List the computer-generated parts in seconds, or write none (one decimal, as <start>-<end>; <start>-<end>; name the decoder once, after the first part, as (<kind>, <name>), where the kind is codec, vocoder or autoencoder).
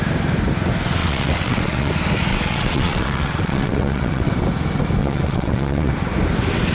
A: 1.0-1.9 (vocoder, WaveNeXt); 2.3-4.3; 5.0-5.9